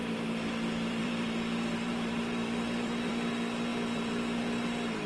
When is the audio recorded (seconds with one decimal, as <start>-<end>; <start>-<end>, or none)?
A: 3.1-3.7; 4.4-5.1